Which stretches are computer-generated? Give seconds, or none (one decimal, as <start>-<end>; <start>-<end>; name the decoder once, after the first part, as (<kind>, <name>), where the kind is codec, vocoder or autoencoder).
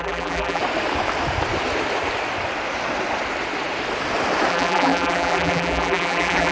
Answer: 0.0-0.6 (vocoder, BigVGAN v2); 4.5-6.5